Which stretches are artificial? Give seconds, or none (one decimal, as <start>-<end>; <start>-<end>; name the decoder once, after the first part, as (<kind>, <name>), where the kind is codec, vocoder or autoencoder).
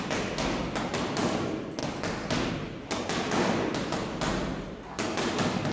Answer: 1.8-2.5 (vocoder, BigVGAN v2)